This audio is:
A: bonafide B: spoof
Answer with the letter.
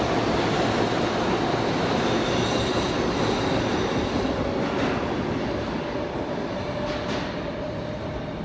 A